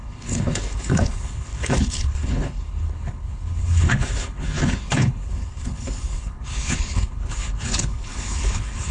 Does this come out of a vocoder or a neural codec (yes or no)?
yes